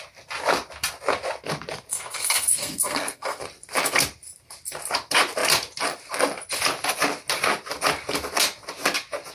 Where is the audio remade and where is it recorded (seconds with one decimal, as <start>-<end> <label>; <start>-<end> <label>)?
0.0-1.9 recorded; 1.9-3.4 remade; 3.4-9.3 recorded